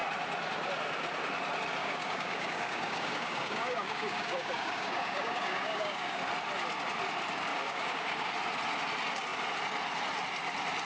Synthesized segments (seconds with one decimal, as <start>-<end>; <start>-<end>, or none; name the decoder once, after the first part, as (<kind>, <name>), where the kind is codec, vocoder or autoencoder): 1.8-6.2 (codec, DAC); 7.5-8.3